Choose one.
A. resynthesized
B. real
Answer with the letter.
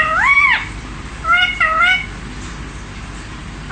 A